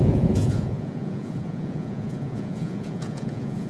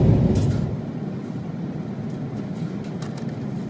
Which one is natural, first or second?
second